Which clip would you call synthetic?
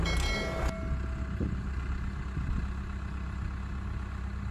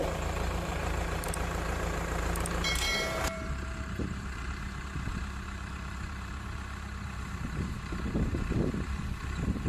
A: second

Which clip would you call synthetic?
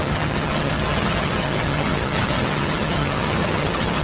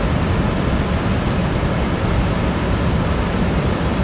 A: first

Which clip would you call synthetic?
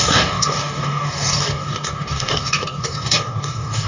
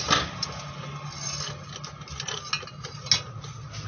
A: first